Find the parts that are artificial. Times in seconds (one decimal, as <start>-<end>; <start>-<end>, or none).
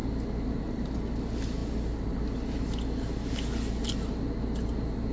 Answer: none